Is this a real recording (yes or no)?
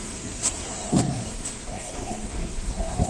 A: no